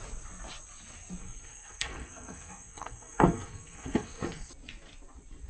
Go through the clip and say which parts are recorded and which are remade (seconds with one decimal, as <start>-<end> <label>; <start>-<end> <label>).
0.0-1.2 recorded; 1.2-4.5 remade; 4.5-5.5 recorded